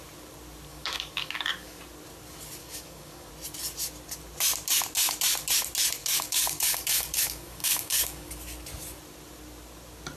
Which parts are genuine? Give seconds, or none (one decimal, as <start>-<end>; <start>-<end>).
0.0-0.7; 1.8-2.6; 3.3-6.0; 8.3-10.2